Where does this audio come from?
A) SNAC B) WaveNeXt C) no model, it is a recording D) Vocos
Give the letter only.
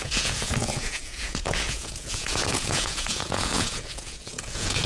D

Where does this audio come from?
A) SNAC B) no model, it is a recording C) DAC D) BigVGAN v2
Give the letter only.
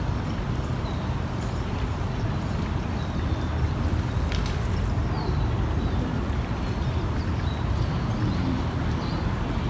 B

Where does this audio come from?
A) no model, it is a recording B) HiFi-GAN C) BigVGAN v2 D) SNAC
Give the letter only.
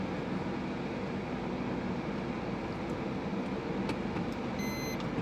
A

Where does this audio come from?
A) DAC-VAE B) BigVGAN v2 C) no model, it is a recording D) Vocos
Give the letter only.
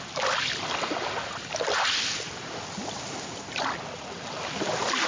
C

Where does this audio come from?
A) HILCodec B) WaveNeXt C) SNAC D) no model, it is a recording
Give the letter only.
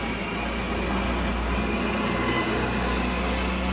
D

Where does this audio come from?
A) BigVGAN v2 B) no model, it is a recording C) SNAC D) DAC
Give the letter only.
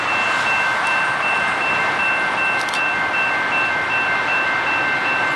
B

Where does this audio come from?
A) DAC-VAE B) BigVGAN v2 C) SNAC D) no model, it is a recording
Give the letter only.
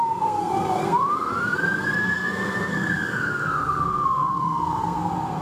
C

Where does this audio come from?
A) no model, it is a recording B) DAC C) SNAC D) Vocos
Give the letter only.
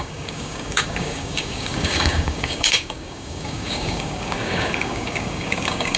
B